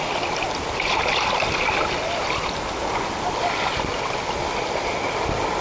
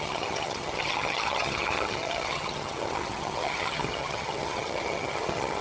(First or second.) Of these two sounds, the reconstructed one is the second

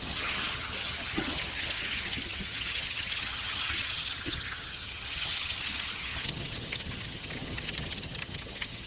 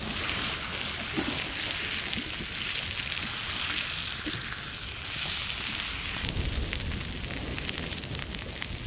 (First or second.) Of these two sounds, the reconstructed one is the first